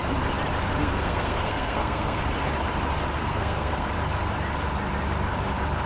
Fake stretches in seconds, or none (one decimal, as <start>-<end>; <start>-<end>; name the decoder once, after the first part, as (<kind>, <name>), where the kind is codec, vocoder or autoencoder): 0.8-2.2 (codec, SNAC); 3.2-3.9

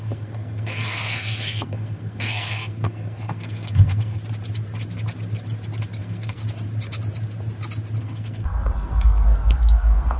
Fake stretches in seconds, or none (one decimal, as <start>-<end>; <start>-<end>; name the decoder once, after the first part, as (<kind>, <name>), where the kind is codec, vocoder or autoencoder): 0.0-4.2 (codec, SNAC); 6.0-6.4; 8.0-10.2

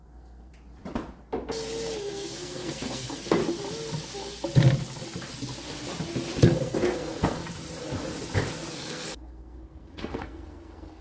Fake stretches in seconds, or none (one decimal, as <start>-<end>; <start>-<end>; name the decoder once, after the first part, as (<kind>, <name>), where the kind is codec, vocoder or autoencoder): 0.0-0.5 (codec, SNAC); 2.0-3.4; 6.4-7.4; 8.7-11.0